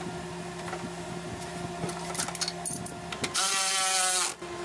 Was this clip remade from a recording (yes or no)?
no